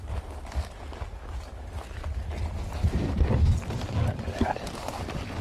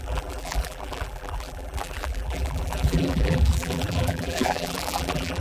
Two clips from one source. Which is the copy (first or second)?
second